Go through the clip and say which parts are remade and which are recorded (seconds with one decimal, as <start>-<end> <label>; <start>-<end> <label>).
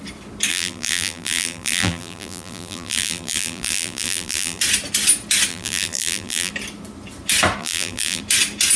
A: 0.0-0.5 recorded; 0.5-4.6 remade; 4.6-5.5 recorded; 5.5-6.5 remade; 6.5-7.6 recorded; 7.6-8.2 remade; 8.2-8.8 recorded